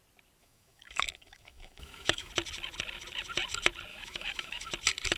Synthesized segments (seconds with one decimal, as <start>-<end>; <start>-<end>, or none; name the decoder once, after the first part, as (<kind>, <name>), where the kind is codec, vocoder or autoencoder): 0.4-2.3 (autoencoder, DAC-VAE); 3.9-4.7